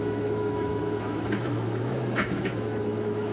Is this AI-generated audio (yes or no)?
yes